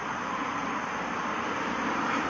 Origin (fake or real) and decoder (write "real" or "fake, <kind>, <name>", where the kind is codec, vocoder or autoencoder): fake, vocoder, BigVGAN v2